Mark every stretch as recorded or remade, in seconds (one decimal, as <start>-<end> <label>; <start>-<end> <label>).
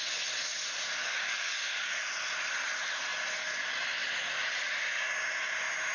0.0-1.0 recorded; 1.0-2.0 remade; 2.0-5.9 recorded